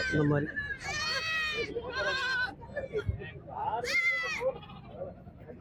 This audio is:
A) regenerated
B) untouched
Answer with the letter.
B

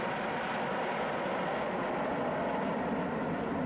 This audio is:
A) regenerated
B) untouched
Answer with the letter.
B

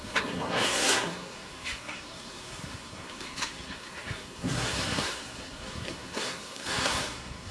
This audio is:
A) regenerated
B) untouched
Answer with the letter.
A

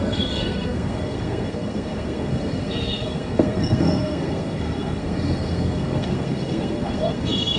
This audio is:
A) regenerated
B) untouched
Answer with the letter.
A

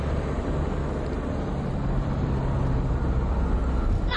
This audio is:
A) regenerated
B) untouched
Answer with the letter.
B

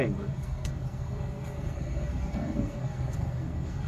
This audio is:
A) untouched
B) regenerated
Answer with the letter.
B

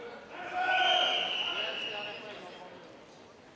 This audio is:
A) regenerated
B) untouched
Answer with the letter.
B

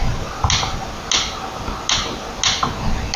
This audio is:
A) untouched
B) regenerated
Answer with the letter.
A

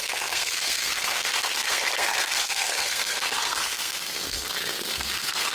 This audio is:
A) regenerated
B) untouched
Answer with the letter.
A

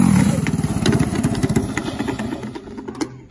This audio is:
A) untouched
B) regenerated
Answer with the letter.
A